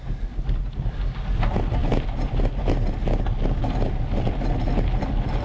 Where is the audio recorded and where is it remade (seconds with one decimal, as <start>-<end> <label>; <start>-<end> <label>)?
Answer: 0.0-5.4 recorded